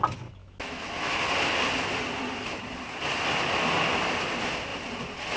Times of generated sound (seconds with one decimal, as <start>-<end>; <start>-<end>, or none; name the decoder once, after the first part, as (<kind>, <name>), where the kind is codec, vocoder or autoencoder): 0.4-1.2 (autoencoder, DAC-VAE)